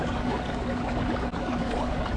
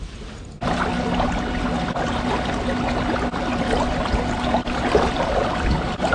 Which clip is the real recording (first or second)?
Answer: second